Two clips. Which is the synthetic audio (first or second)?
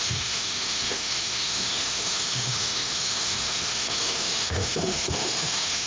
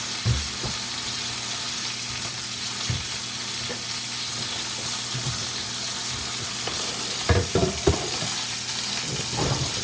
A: first